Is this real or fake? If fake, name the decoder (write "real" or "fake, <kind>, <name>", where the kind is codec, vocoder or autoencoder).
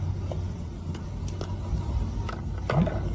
real